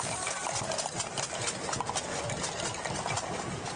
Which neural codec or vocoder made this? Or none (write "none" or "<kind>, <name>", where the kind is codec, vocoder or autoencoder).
none